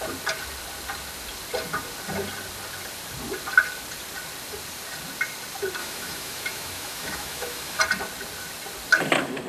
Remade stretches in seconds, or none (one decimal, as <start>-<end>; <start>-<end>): 5.8-7.8